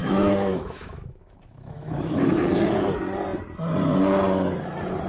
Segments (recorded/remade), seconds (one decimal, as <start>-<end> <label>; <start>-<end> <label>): 0.0-2.4 remade; 2.4-5.1 recorded